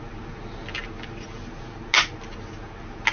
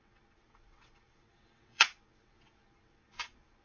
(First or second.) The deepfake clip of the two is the second